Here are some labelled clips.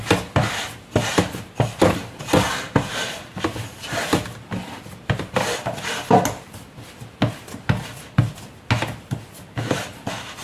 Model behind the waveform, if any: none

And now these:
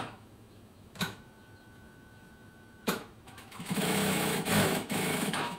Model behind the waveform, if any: autoencoder, DAC-VAE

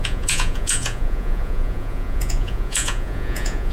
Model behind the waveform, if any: vocoder, Vocos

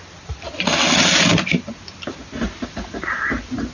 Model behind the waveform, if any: none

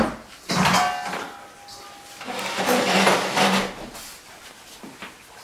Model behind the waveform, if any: none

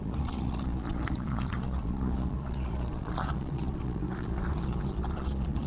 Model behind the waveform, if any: vocoder, Vocos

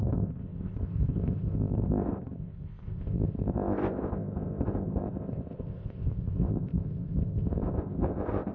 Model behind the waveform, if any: codec, ZipCodec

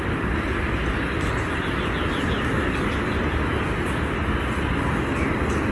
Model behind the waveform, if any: none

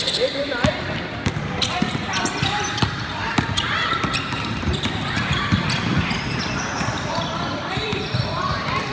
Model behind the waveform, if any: vocoder, BigVGAN v2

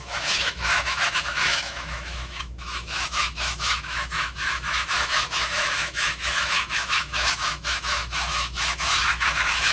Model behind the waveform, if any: autoencoder, DAC-VAE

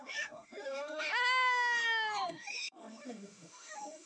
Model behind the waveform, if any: autoencoder, DAC-VAE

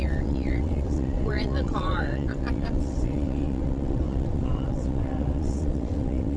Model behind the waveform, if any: vocoder, WaveNeXt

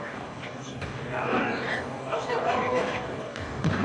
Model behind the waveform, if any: codec, DAC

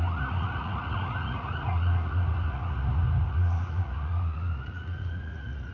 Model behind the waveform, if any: vocoder, Vocos